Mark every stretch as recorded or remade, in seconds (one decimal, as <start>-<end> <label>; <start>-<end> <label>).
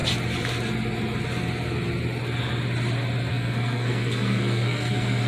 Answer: 0.0-3.3 recorded; 3.3-5.3 remade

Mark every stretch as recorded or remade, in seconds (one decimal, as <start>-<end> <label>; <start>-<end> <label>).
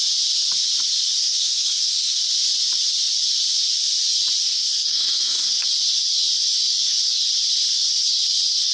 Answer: 0.0-1.2 recorded; 1.2-2.2 remade; 2.2-4.4 recorded; 4.4-5.5 remade; 5.5-8.7 recorded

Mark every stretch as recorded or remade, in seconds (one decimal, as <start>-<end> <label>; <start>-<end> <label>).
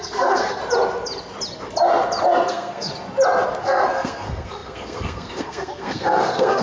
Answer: 0.0-0.6 remade; 0.6-2.5 recorded; 2.5-2.9 remade; 2.9-3.6 recorded; 3.6-6.6 remade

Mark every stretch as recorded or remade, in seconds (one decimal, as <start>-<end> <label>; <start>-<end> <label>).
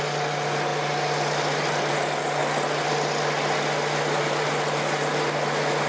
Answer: 0.0-5.9 recorded